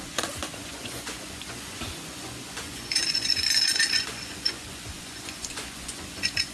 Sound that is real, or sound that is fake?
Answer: fake